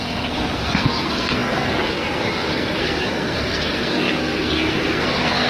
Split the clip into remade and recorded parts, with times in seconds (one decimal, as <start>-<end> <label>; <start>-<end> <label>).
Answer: 0.0-5.5 remade